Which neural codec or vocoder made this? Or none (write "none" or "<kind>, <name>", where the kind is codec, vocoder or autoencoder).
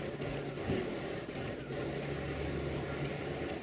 none